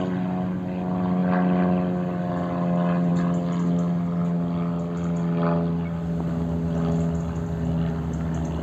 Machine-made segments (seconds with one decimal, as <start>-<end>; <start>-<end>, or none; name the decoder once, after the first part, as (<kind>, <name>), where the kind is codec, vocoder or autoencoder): none